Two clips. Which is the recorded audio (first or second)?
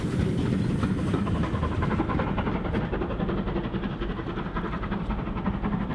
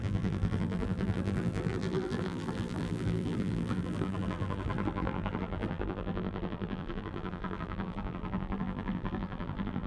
first